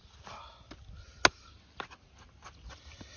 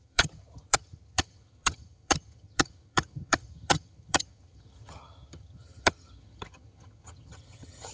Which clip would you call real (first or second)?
first